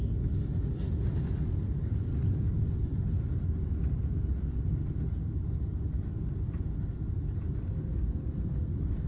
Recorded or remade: recorded